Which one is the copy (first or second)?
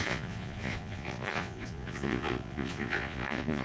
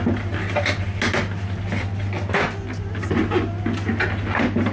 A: first